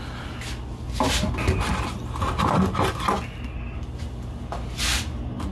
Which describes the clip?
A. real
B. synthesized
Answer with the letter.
A